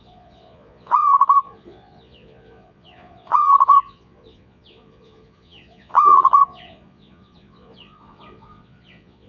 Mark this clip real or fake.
fake